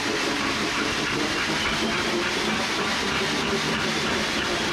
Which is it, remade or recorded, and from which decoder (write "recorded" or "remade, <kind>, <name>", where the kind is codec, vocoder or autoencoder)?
remade, vocoder, BigVGAN v2